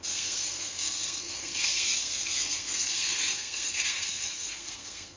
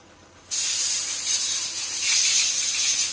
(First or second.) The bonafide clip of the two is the second